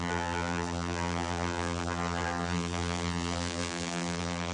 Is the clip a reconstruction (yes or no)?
yes